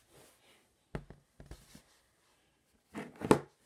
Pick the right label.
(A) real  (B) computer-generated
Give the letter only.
A